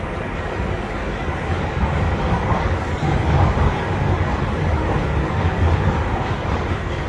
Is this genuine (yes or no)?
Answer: no